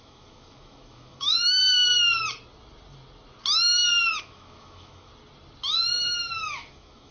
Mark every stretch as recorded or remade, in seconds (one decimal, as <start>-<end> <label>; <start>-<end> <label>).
0.0-1.6 remade; 1.6-4.2 recorded; 4.2-5.1 remade; 5.1-6.0 recorded; 6.0-7.1 remade